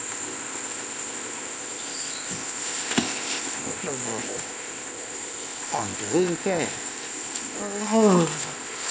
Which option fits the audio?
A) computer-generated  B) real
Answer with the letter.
A